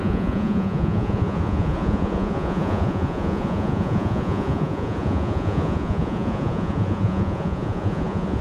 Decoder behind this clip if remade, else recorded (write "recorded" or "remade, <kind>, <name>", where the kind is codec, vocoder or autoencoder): remade, vocoder, Vocos